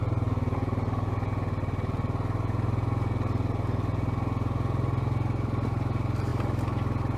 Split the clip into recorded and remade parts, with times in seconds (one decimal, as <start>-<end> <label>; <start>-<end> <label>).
0.0-7.2 recorded